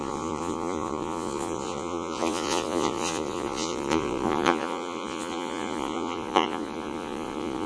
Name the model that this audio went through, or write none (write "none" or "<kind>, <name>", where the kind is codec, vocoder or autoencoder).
vocoder, Vocos